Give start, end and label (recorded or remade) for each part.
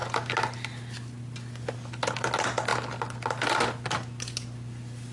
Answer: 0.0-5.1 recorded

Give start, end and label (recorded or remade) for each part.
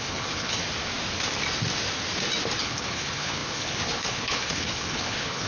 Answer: 0.0-0.6 remade; 0.6-2.6 recorded; 2.6-5.5 remade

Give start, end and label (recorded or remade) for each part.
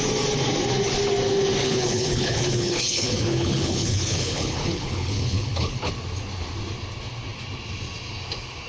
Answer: 0.0-1.6 recorded; 1.6-5.9 remade; 5.9-8.7 recorded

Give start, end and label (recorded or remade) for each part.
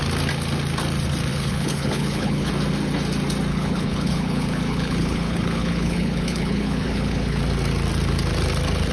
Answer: 0.0-1.3 recorded; 1.3-2.5 remade; 2.5-3.5 recorded; 3.5-7.4 remade; 7.4-8.9 recorded